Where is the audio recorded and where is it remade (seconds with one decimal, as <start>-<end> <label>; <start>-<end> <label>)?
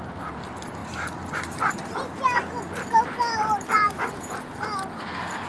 0.0-0.8 recorded; 0.8-4.1 remade; 4.1-5.5 recorded